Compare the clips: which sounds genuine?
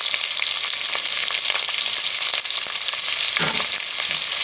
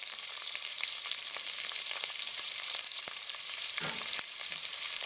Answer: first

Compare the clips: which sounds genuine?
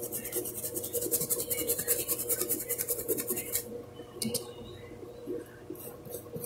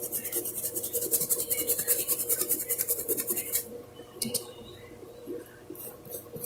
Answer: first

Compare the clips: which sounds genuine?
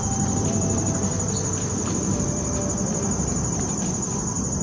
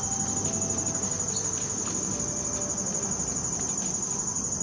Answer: second